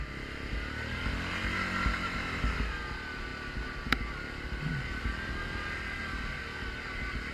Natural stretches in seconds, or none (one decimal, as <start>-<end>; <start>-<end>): 0.0-7.3